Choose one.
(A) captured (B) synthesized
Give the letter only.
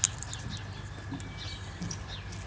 A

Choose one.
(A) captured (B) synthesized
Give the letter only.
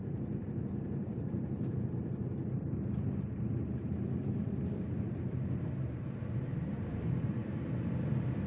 B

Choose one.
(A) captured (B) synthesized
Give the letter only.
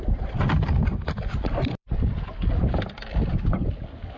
A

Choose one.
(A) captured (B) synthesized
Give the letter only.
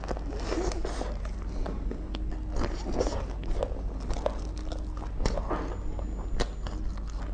A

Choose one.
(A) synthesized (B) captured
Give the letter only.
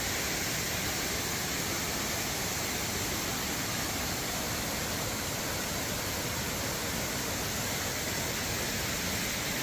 B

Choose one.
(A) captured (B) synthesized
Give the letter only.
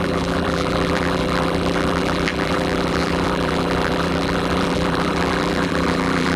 B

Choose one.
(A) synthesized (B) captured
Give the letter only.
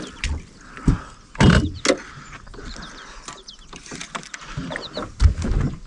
B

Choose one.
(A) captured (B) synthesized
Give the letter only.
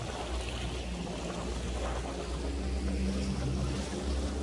A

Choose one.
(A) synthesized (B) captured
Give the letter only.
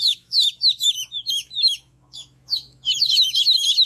A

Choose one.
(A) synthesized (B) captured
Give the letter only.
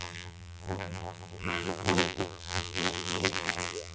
A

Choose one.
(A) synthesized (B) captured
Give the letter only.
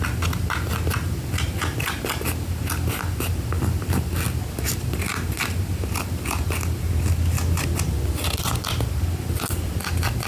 B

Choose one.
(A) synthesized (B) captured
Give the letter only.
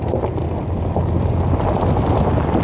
B